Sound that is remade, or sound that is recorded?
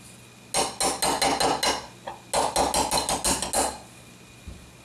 recorded